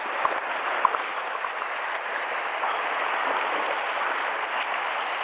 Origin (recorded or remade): recorded